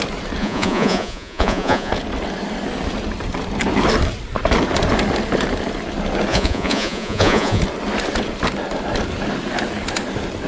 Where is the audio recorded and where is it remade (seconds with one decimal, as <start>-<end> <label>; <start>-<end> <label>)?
0.0-0.4 recorded; 0.4-1.9 remade; 1.9-6.3 recorded; 6.3-7.6 remade; 7.6-10.5 recorded